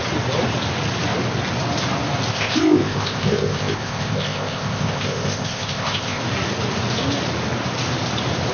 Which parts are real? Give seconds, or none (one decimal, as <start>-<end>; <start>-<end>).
0.0-2.3; 6.2-8.5